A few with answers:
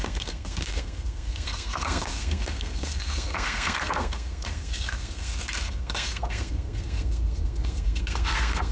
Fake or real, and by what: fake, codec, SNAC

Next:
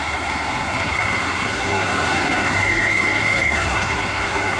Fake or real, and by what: fake, codec, SNAC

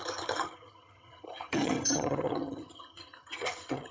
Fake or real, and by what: fake, vocoder, HiFi-GAN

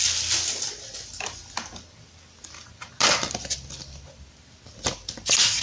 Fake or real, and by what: real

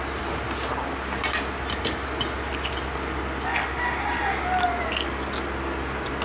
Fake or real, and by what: real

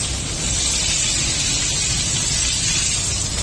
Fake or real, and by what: real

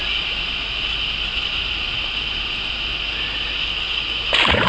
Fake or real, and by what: real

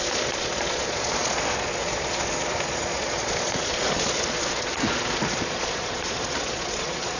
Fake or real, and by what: fake, vocoder, Vocos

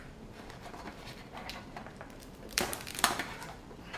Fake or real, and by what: fake, vocoder, BigVGAN v2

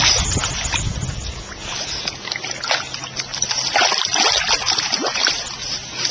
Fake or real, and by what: real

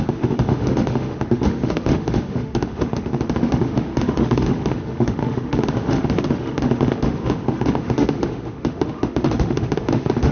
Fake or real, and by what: fake, autoencoder, DAC-VAE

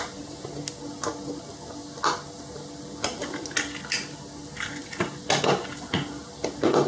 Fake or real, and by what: real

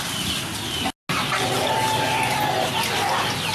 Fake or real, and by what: real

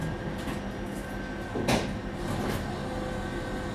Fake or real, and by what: real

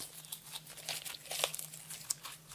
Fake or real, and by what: real